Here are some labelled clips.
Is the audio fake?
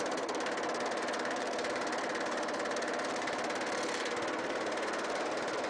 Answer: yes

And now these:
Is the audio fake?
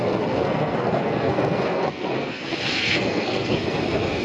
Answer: yes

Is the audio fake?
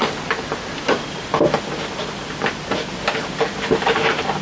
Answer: no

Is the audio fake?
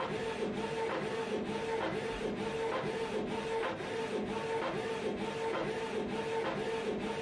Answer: yes